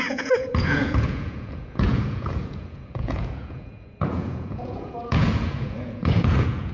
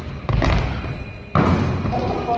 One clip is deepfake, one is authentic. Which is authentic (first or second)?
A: second